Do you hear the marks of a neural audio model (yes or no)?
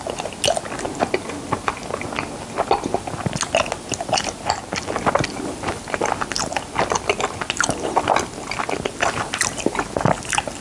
no